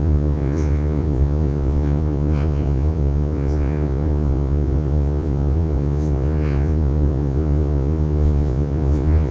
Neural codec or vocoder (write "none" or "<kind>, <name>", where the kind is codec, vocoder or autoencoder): vocoder, Vocos